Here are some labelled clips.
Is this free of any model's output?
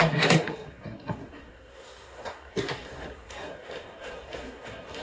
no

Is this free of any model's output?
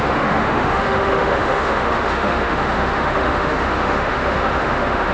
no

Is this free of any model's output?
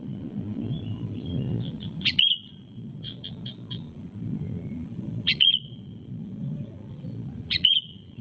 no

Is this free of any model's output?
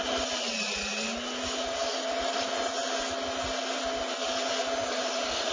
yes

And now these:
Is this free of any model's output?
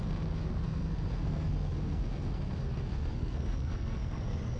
no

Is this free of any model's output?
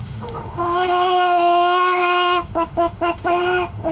no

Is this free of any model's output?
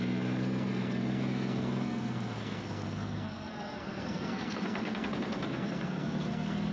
no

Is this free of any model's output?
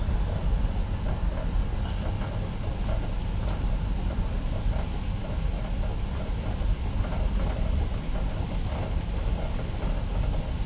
yes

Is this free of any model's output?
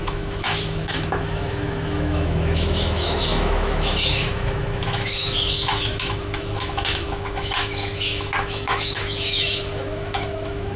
no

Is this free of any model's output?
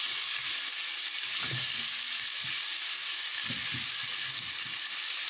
yes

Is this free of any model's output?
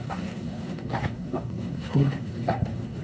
no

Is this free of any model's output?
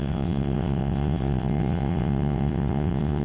no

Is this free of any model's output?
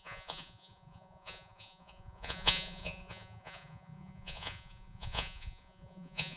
no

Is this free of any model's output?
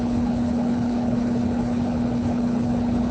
no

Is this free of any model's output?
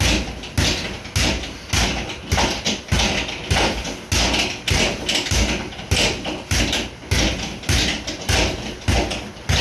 yes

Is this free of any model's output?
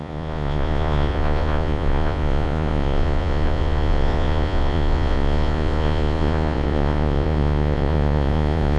no